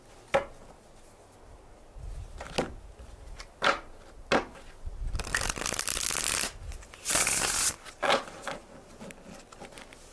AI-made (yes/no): no